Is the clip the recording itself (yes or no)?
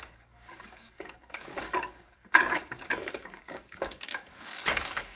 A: no